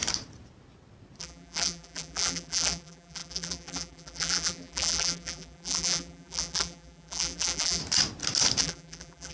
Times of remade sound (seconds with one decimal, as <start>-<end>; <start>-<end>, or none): 1.2-7.8; 8.6-9.3